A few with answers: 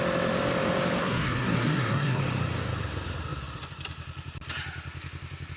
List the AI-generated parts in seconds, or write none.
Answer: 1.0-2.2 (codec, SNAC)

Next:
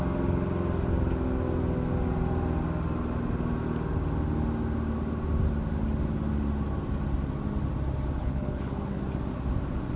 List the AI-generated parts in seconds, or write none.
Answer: 8.2-9.0 (codec, HILCodec)